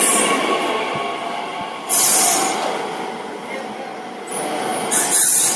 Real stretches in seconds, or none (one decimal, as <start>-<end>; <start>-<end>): 0.0-5.6